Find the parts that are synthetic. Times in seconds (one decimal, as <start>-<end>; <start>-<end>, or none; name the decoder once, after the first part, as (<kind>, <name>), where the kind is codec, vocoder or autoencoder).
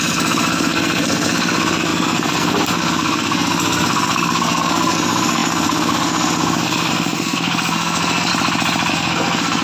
0.0-8.3 (codec, SNAC); 8.9-9.6